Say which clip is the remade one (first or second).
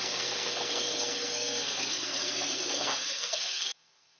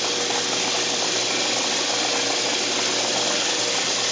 first